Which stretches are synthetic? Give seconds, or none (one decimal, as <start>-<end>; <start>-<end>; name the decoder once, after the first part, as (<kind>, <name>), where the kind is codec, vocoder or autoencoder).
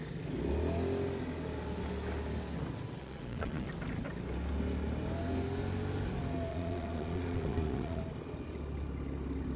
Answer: 3.0-3.7 (vocoder, Vocos); 6.5-8.0